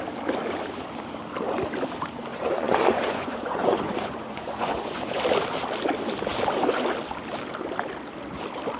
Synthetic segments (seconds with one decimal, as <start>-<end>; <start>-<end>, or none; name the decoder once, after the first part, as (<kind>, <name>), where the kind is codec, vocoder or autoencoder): 2.3-5.2 (vocoder, Vocos)